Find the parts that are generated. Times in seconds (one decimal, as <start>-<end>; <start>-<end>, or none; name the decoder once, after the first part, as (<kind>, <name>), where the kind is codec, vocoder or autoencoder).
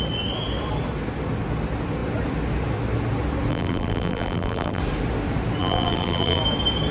3.5-4.8 (vocoder, BigVGAN v2); 5.6-6.4